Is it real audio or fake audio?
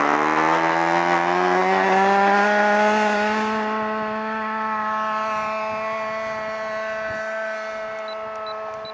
real